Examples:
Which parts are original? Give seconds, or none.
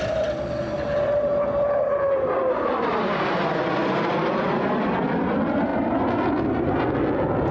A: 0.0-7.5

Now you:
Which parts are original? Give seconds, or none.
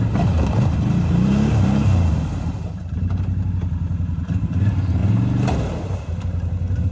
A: 5.0-6.2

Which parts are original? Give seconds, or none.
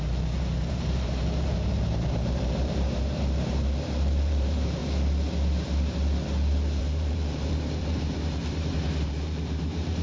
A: 4.8-6.8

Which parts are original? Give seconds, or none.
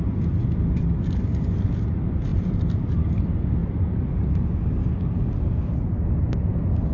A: 0.0-2.3; 2.9-3.6; 4.9-6.9